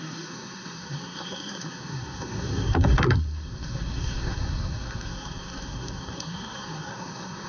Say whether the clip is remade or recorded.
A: remade